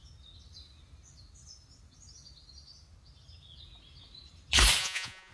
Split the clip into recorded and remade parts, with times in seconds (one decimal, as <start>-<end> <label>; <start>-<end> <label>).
0.0-4.8 recorded; 4.8-5.3 remade